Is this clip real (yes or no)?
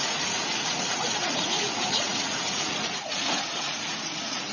no